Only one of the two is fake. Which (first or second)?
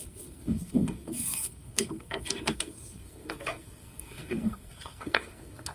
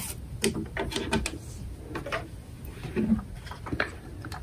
first